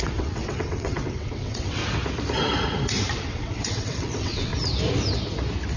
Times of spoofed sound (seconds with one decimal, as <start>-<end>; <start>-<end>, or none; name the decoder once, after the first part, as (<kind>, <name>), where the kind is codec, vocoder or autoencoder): 0.0-1.8 (vocoder, WaveNeXt); 3.1-4.5